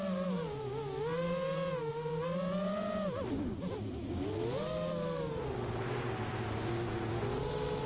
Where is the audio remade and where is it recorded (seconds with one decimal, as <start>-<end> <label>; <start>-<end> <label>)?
0.0-1.1 recorded; 1.1-1.9 remade; 1.9-5.4 recorded; 5.4-6.3 remade; 6.3-7.9 recorded